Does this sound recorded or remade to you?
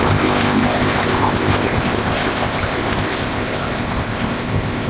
remade